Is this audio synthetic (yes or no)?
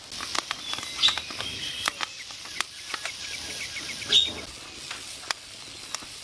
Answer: no